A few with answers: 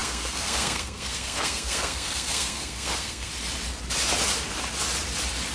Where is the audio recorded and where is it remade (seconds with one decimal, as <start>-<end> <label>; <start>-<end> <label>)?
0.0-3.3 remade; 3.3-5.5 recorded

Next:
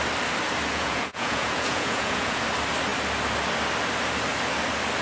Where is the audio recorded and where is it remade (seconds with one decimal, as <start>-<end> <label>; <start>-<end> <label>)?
0.0-0.7 recorded; 0.7-2.4 remade; 2.4-5.0 recorded

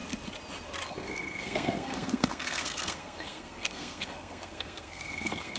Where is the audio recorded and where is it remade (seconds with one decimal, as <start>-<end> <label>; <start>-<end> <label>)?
0.0-0.9 recorded; 0.9-5.6 remade